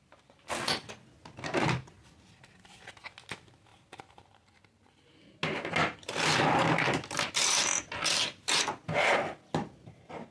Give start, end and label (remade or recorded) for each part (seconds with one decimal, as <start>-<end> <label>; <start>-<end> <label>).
0.0-10.3 recorded